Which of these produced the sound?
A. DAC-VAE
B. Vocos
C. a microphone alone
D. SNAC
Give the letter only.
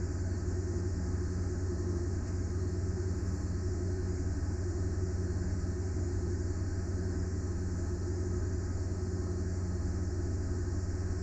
A